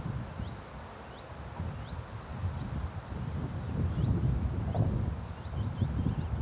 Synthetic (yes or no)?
no